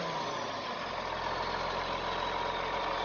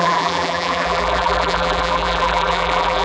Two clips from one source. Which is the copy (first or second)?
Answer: second